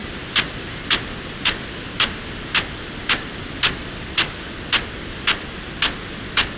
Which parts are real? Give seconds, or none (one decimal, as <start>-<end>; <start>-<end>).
0.0-6.6